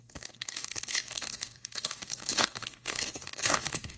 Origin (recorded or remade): remade